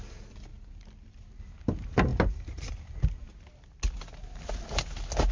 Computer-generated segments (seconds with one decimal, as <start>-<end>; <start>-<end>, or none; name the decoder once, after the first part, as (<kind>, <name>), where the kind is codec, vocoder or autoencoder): none